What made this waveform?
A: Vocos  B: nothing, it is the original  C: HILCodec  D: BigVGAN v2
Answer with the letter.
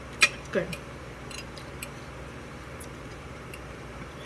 D